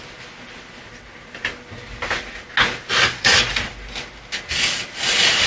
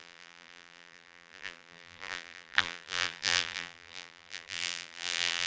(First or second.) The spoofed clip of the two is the second